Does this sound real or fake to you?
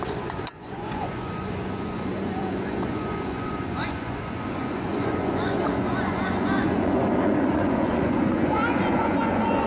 fake